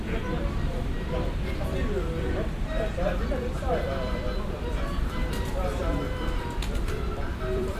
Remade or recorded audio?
remade